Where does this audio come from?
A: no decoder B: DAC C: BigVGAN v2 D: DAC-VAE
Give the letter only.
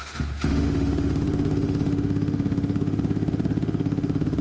D